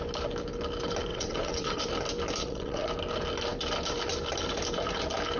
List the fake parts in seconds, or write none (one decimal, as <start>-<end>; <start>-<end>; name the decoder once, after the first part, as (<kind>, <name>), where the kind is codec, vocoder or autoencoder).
1.1-1.8 (vocoder, WaveNeXt); 2.4-2.9